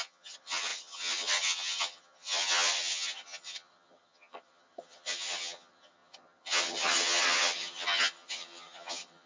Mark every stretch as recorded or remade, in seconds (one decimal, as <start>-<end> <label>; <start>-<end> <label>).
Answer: 0.0-9.3 remade